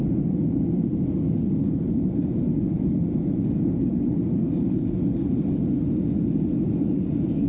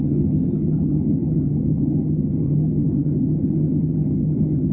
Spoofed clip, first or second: second